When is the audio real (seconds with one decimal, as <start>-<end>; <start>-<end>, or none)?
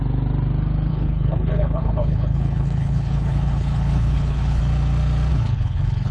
0.0-0.9; 4.6-5.3